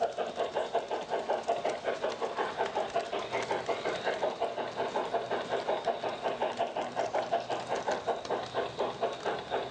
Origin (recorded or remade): recorded